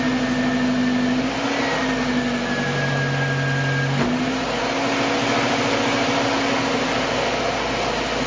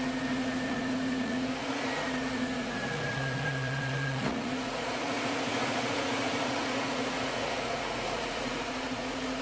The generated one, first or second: second